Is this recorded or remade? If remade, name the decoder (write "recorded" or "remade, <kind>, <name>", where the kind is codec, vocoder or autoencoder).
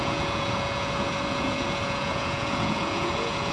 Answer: remade, vocoder, Vocos